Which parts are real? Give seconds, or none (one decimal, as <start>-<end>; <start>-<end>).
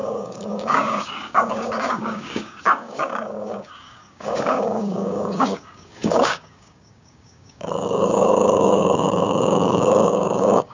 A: none